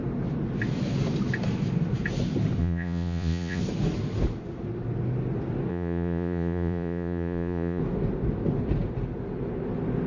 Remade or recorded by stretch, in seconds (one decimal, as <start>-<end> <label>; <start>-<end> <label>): 0.0-2.6 recorded; 2.6-3.6 remade; 3.6-5.7 recorded; 5.7-7.8 remade; 7.8-10.1 recorded